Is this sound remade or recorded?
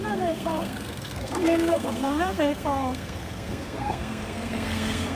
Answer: remade